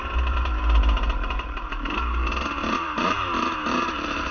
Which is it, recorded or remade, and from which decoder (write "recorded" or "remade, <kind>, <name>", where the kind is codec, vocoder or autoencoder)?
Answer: remade, vocoder, BigVGAN v2